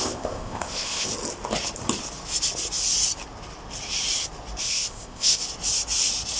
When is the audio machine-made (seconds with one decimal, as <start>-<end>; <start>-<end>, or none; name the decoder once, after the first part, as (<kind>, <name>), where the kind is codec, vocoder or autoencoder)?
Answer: 0.0-1.1 (codec, ZipCodec); 4.6-5.4